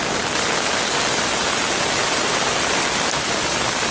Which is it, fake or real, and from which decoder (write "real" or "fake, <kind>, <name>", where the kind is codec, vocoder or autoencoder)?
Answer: real